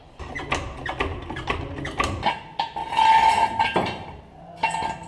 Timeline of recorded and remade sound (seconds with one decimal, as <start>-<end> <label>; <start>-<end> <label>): 0.0-5.1 recorded